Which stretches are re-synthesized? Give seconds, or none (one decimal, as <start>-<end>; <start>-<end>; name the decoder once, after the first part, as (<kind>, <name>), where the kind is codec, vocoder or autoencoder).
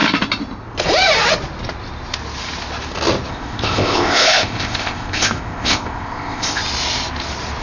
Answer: 3.3-6.6 (codec, ZipCodec)